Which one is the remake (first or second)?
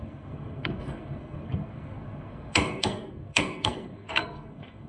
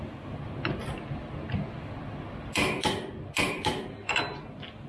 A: first